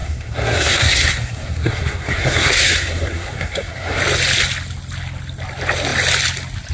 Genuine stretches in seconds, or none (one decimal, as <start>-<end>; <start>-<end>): 4.0-6.7